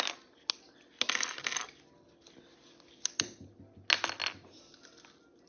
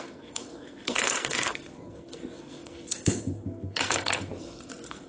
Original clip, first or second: first